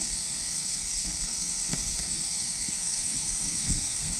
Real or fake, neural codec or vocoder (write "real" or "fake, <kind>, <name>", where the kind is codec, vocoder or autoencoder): fake, codec, SNAC